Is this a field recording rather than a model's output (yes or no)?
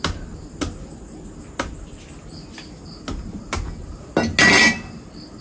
yes